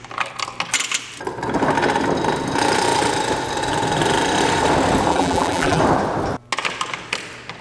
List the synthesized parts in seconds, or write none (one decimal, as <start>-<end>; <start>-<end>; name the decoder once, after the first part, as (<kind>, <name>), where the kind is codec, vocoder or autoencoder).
5.1-5.8 (vocoder, BigVGAN v2)